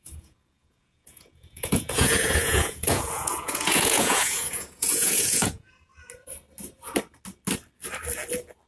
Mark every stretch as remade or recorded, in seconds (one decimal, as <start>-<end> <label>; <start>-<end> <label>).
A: 0.0-5.9 remade; 5.9-8.7 recorded